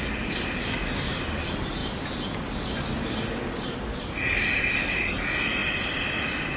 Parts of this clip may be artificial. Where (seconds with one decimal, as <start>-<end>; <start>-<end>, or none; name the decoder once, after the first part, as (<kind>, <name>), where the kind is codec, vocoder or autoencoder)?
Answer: 0.6-1.4 (codec, DAC)